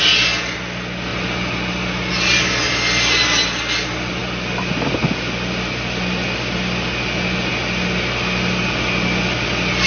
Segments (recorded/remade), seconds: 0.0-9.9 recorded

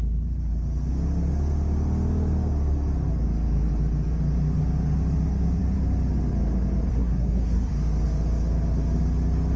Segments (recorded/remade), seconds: 0.0-6.9 recorded; 6.9-7.7 remade; 7.7-9.6 recorded

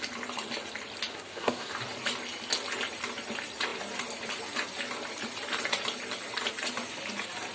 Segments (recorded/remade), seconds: 0.0-1.1 recorded; 1.1-1.7 remade; 1.7-7.5 recorded

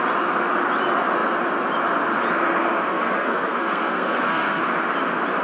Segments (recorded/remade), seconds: 0.0-2.9 recorded; 2.9-4.6 remade; 4.6-5.4 recorded

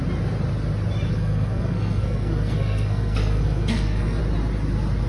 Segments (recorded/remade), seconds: 0.0-1.1 recorded; 1.1-4.2 remade; 4.2-5.1 recorded